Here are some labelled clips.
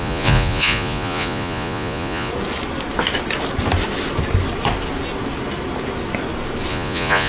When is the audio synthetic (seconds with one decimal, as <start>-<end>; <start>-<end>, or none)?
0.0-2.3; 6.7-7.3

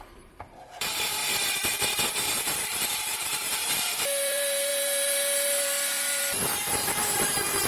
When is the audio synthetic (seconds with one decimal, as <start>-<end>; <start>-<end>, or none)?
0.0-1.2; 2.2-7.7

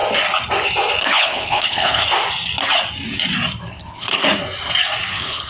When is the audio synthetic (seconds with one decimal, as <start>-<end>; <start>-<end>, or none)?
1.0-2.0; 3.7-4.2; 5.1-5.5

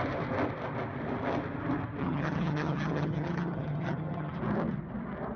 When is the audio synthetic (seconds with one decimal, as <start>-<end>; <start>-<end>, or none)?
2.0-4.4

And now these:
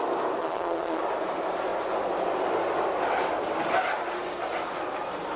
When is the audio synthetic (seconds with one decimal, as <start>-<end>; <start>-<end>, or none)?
0.4-1.0

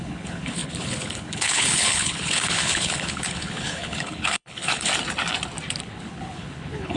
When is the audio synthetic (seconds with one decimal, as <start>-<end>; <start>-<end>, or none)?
0.0-4.9; 5.8-7.0

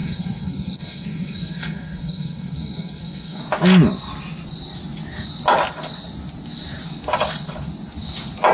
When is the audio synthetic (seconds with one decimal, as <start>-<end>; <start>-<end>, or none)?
0.0-3.4

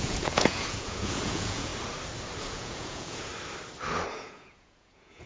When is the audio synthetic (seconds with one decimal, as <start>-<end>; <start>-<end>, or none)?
0.0-1.7; 2.4-3.3; 4.1-5.3